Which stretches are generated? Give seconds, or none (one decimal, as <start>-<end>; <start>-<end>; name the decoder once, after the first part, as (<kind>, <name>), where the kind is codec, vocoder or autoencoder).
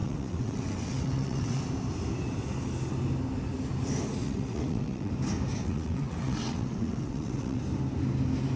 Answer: 0.0-1.6 (vocoder, WaveNeXt); 4.2-5.1; 5.6-7.6